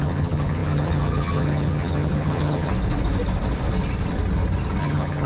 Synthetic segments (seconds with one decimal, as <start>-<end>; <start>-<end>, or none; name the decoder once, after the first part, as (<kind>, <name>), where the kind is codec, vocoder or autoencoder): 0.0-2.7 (vocoder, HiFi-GAN); 4.8-5.3